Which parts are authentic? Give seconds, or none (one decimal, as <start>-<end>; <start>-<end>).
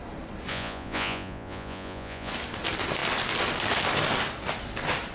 0.0-0.5; 2.3-5.1